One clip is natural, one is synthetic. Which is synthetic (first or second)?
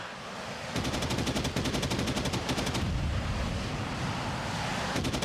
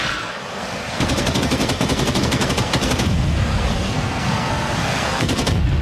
second